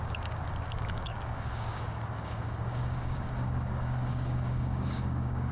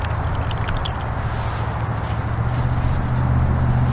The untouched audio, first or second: second